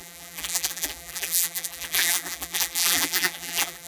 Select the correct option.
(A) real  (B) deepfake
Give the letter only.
B